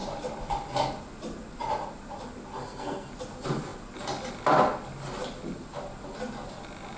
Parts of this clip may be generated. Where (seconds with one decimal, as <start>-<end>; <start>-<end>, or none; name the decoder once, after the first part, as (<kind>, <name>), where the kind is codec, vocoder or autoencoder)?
2.6-3.1 (codec, SNAC)